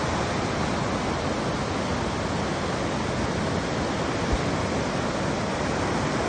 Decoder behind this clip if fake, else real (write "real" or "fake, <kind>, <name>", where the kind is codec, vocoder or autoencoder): real